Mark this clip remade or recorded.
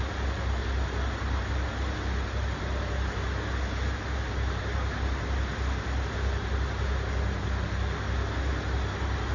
recorded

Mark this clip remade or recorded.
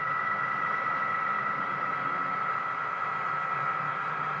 recorded